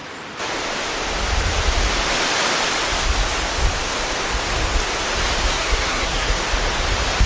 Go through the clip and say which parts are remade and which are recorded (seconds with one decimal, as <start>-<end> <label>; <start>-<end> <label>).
0.0-5.5 recorded; 5.5-6.4 remade; 6.4-7.3 recorded